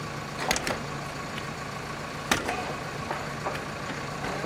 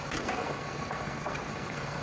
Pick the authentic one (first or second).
first